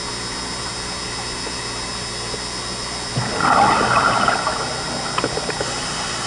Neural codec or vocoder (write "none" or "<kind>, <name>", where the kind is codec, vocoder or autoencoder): none